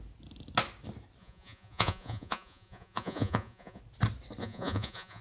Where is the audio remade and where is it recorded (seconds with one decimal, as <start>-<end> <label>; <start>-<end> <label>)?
0.0-1.2 recorded; 1.2-3.8 remade; 3.8-4.4 recorded; 4.4-5.2 remade